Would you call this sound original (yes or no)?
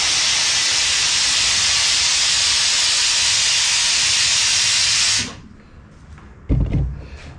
yes